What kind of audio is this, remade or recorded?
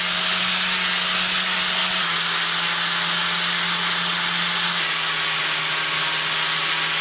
recorded